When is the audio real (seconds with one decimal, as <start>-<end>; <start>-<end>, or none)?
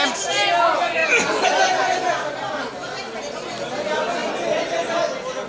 0.0-5.5